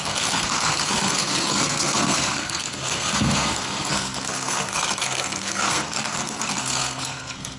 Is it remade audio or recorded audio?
remade